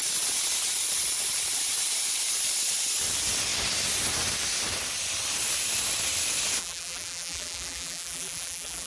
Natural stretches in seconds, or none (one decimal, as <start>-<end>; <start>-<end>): 0.0-6.6